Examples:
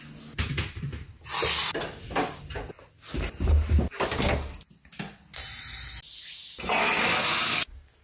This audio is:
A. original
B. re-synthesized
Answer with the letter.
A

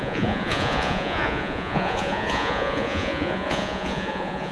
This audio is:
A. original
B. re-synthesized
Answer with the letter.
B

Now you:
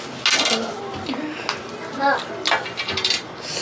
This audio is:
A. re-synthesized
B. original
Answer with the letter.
B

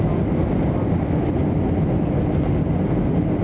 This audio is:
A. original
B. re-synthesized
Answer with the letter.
A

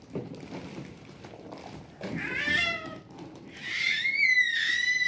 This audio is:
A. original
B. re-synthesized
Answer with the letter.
A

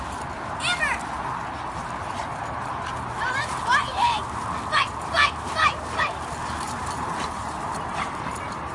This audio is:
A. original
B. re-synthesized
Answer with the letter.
A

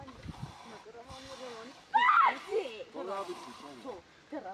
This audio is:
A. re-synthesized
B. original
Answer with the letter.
B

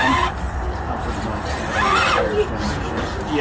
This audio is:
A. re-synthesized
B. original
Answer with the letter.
B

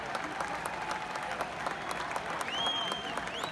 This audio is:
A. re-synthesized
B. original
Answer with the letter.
B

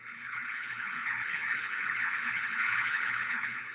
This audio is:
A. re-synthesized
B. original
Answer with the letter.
A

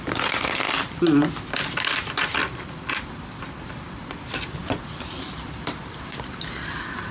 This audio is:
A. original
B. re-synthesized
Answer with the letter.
B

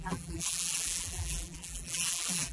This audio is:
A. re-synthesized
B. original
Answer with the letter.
A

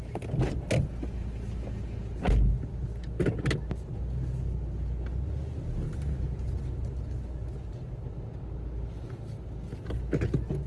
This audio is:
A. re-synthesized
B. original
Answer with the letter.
B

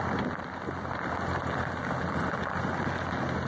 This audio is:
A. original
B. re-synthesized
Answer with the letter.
A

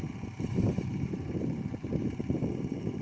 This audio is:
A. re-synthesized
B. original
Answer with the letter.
A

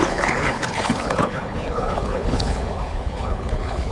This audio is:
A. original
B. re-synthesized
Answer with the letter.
B